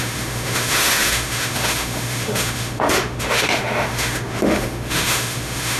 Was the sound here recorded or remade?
remade